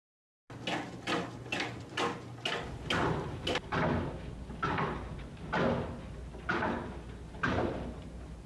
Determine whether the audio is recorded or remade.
recorded